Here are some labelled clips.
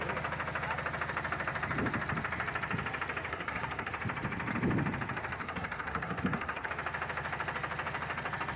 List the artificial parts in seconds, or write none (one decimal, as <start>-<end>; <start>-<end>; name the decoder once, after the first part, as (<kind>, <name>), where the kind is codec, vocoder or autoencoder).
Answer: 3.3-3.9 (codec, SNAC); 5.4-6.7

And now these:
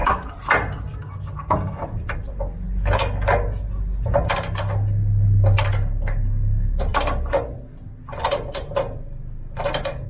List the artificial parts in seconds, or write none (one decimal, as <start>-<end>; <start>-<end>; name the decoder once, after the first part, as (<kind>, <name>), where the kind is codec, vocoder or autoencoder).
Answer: none

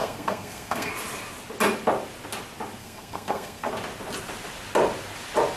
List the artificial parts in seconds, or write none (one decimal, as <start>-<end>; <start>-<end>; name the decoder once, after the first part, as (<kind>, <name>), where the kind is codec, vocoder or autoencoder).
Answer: 0.0-0.9 (codec, SNAC); 2.8-3.7

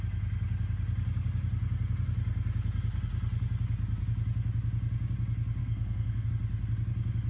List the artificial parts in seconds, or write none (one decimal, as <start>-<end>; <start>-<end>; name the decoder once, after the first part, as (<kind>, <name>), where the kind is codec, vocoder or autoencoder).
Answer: 5.6-6.3 (codec, SNAC)

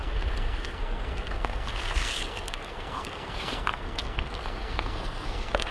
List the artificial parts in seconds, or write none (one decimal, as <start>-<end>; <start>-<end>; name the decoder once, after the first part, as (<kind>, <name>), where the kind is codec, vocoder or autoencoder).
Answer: 0.0-5.7 (codec, SNAC)